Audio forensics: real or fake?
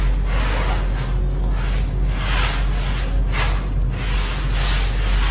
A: real